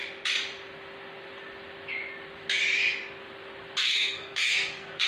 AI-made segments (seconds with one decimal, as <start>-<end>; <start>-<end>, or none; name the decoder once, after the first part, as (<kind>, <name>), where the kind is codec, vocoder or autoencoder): 3.8-5.1 (codec, SNAC)